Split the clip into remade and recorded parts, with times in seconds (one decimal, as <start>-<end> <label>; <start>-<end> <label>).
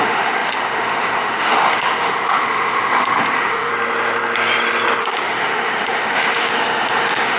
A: 0.0-3.7 remade; 3.7-5.0 recorded; 5.0-7.4 remade